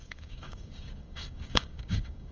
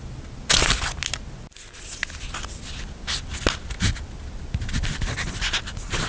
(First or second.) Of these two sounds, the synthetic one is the first